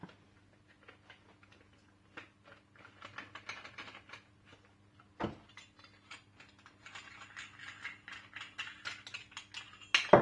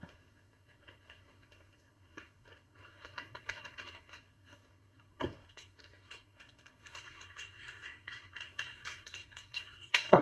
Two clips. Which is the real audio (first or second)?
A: first